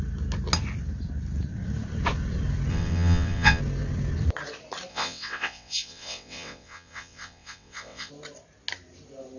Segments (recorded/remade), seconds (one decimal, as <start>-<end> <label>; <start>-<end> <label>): 0.0-2.7 recorded; 2.7-3.6 remade; 3.6-4.9 recorded; 4.9-8.1 remade; 8.1-9.4 recorded